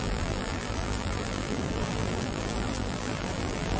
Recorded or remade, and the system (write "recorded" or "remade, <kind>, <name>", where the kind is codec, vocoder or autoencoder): remade, vocoder, BigVGAN v2